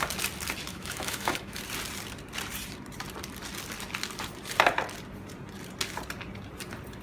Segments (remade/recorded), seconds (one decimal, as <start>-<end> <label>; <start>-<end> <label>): 0.0-0.7 recorded; 0.7-1.6 remade; 1.6-7.0 recorded